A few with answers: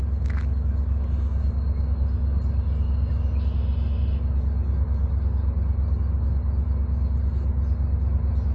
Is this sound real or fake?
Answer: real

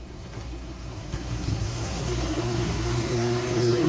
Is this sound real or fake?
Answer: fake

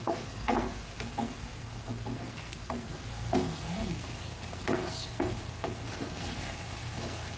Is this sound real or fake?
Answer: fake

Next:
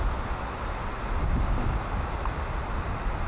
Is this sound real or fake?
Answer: real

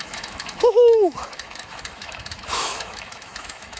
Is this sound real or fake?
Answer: fake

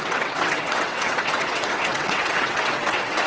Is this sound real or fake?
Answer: fake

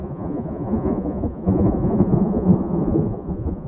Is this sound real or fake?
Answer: fake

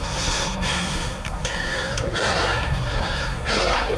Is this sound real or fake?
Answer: fake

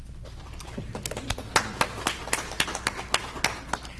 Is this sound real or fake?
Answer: real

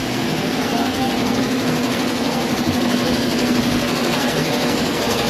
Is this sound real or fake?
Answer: fake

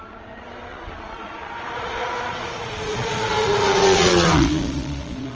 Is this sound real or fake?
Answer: fake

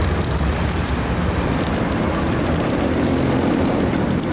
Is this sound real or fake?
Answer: fake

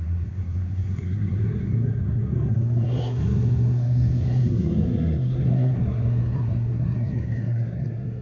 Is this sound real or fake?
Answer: fake